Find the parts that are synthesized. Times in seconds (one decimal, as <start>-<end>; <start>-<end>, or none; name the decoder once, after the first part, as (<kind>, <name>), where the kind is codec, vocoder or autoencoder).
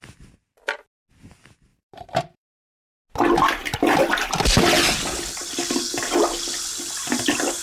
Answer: 1.7-2.6 (vocoder, BigVGAN v2); 3.6-4.6